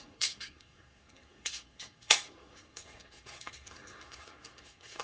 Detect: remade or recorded remade